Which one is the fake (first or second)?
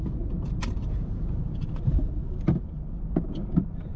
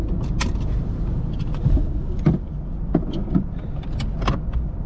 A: first